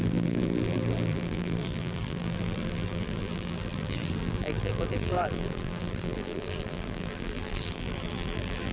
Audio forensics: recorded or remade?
remade